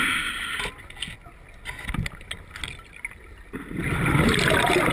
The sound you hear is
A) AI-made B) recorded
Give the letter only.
B